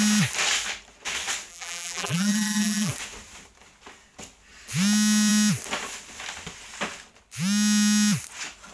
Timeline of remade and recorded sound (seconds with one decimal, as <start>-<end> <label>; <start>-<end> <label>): 0.0-1.5 recorded; 1.5-2.9 remade; 2.9-8.7 recorded